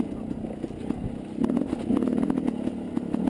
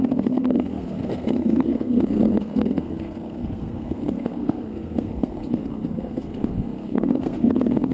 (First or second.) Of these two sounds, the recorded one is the first